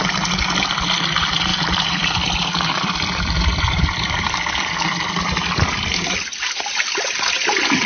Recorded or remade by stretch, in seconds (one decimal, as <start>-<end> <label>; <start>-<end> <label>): 0.0-1.5 recorded; 1.5-5.1 remade; 5.1-7.9 recorded